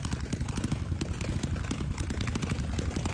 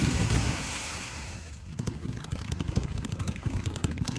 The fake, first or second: second